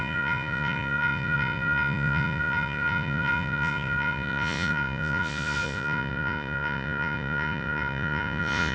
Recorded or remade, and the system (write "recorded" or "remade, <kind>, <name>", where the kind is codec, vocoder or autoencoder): remade, vocoder, Vocos